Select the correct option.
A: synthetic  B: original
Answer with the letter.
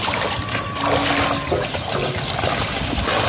B